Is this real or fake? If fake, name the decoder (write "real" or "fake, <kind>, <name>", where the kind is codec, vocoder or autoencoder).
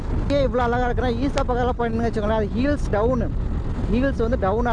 real